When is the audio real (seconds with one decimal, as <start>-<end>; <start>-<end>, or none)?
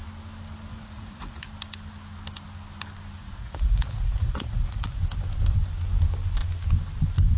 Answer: 0.0-0.7; 1.4-3.2; 5.0-7.4